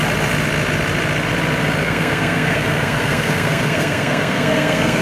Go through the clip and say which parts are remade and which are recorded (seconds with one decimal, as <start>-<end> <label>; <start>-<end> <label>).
0.0-1.8 recorded; 1.8-5.0 remade